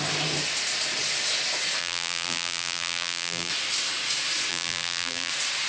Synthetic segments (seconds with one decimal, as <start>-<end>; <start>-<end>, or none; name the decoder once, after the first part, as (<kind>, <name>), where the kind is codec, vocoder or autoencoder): 1.8-3.5 (vocoder, BigVGAN v2); 4.5-5.3